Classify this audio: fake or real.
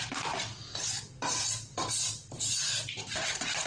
real